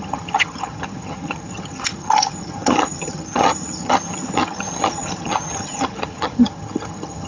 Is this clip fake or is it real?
fake